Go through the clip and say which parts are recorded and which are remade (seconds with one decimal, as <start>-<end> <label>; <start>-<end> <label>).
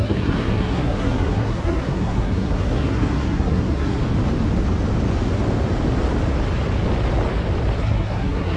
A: 0.0-4.0 remade; 4.0-7.8 recorded; 7.8-8.6 remade